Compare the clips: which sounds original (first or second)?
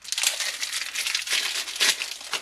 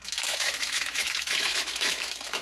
first